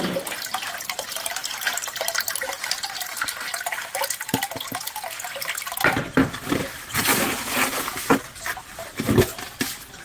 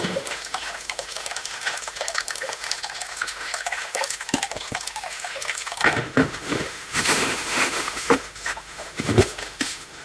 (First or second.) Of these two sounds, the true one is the first